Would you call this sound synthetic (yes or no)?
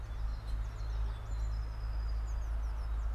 no